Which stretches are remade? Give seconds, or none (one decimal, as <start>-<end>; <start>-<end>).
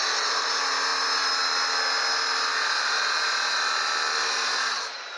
none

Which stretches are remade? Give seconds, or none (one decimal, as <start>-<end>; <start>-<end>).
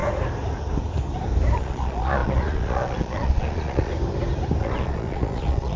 1.6-3.9; 4.6-5.8